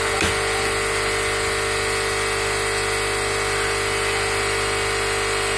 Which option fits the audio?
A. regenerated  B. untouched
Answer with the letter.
B